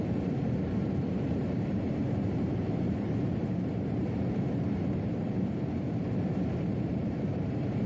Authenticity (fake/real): fake